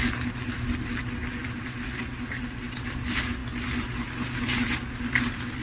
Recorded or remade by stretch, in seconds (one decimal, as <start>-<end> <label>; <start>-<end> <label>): 0.0-5.6 recorded